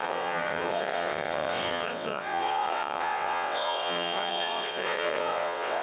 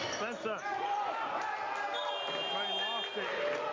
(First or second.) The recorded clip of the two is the second